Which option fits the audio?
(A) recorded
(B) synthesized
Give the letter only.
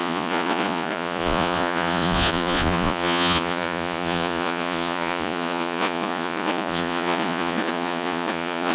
B